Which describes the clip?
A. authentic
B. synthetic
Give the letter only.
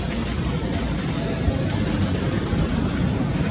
A